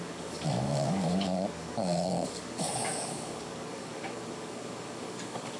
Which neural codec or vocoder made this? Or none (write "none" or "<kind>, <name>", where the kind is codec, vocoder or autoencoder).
codec, DAC